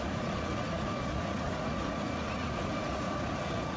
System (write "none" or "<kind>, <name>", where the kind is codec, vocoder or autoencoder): vocoder, Vocos